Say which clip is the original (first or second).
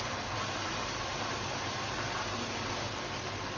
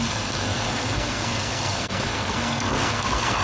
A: first